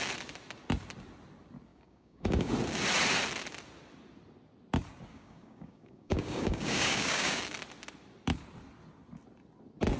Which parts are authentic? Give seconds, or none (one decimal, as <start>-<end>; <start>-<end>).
0.0-1.7; 2.5-5.1; 7.4-10.0